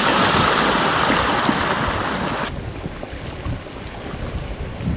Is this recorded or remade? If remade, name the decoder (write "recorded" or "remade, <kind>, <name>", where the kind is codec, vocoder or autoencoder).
recorded